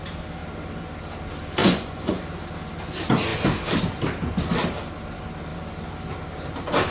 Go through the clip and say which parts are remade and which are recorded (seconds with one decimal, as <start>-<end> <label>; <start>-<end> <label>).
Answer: 0.0-1.6 recorded; 1.6-2.2 remade; 2.2-6.9 recorded